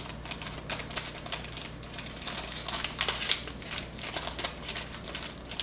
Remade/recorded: recorded